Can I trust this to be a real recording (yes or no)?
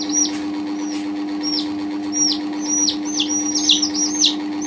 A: yes